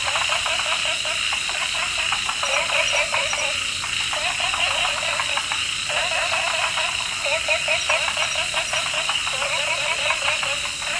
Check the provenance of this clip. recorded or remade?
recorded